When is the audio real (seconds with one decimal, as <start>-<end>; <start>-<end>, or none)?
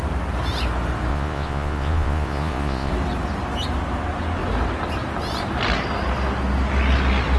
0.0-1.1; 2.9-7.4